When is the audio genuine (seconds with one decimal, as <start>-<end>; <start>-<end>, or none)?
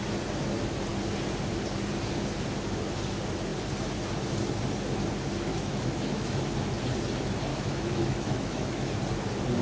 0.0-5.5; 6.4-7.5; 8.9-9.6